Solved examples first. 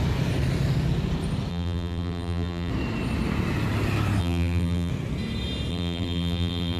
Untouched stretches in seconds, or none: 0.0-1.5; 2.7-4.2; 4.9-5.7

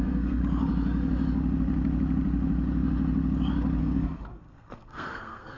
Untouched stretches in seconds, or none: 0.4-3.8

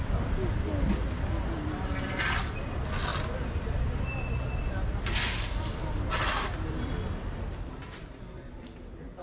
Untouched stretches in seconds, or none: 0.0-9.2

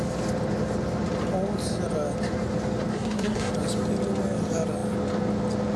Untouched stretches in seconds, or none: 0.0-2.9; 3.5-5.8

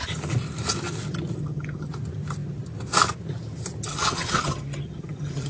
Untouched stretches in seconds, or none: 0.0-1.4; 1.9-3.9